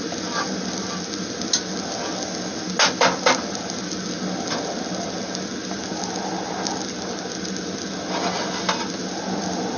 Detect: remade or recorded recorded